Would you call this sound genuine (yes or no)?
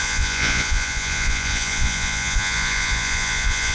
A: no